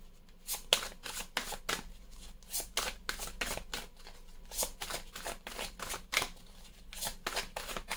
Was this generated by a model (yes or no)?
no